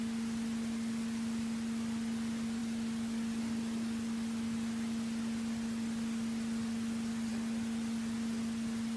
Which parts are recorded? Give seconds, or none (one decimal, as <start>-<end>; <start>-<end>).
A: 0.0-9.0